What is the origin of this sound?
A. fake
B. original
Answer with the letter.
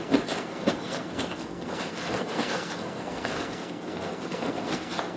A